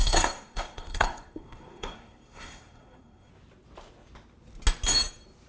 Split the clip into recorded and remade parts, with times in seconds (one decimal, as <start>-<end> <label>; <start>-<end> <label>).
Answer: 0.0-3.3 remade; 3.3-5.5 recorded